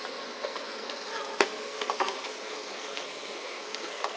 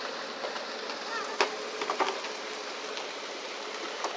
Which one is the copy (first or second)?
first